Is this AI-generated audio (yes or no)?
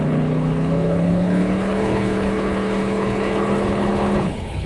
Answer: yes